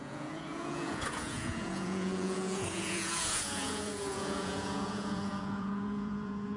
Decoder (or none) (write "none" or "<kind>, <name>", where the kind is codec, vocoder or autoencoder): vocoder, Vocos